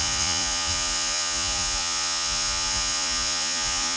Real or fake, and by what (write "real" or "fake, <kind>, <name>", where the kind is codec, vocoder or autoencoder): fake, vocoder, Vocos